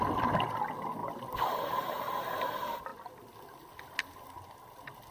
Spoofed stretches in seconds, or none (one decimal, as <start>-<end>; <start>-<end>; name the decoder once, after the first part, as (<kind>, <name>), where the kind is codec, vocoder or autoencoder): none